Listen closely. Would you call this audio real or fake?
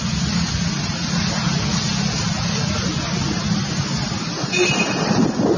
real